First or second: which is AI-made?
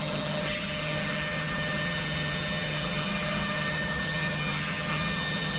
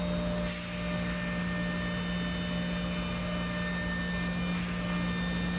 first